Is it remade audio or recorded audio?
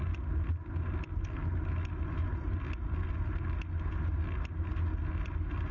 recorded